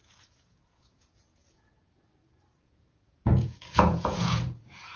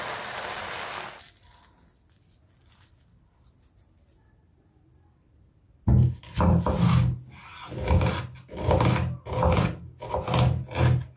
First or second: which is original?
second